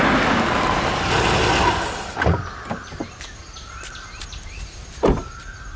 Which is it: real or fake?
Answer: real